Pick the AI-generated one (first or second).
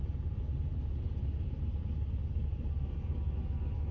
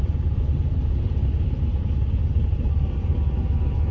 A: second